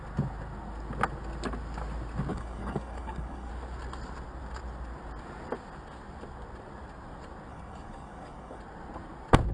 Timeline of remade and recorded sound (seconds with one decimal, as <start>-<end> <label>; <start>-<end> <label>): 0.0-2.3 recorded; 2.3-3.5 remade; 3.5-7.5 recorded; 7.5-8.6 remade; 8.6-9.5 recorded